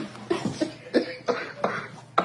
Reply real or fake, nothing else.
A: real